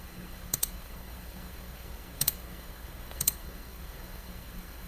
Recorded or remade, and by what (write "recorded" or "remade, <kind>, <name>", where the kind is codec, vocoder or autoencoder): remade, codec, SNAC